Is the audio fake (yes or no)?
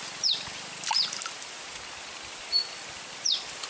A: no